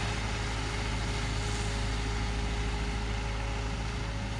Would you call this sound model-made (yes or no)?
no